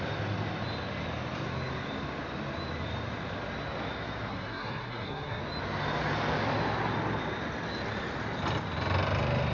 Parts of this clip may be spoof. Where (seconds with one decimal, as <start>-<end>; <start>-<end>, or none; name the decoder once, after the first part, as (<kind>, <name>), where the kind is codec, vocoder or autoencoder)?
4.3-5.4 (codec, SNAC)